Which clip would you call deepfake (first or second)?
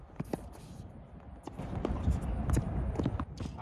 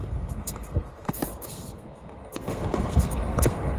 second